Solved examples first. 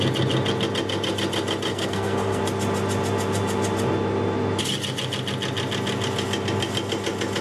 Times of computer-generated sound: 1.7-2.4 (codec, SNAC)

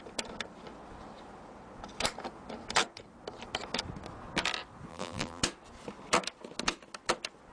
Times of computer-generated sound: 4.9-5.4 (vocoder, BigVGAN v2)